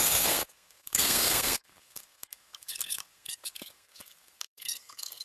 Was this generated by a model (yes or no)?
yes